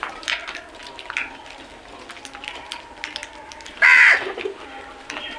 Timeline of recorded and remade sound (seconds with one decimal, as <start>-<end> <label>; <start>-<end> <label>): 0.0-5.4 recorded